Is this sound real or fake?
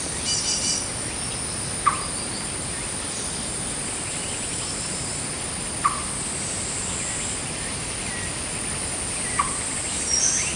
real